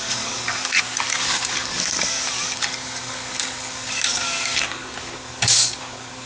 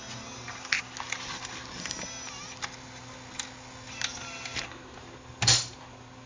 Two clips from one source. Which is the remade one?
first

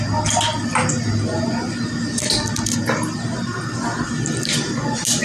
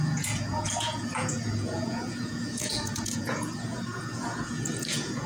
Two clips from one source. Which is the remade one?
second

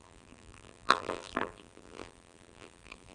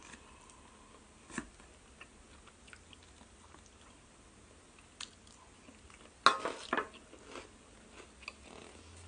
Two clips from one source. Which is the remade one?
first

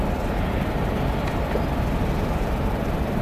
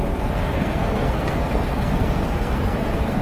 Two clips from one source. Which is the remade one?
second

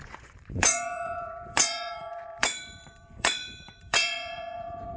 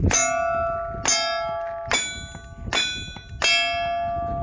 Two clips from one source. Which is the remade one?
first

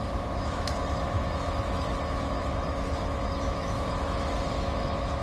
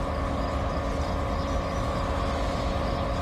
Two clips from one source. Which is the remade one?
first